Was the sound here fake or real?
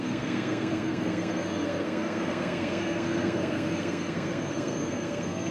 fake